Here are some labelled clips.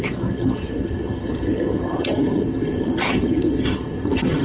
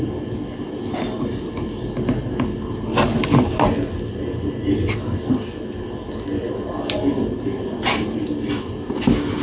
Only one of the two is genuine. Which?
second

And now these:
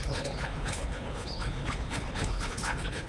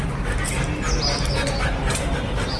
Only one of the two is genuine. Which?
second